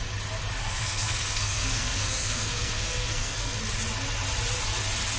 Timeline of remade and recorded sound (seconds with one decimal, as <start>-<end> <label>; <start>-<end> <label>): 0.0-0.6 recorded; 0.6-3.6 remade; 3.6-5.2 recorded